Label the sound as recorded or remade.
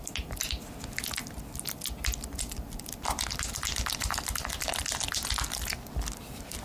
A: recorded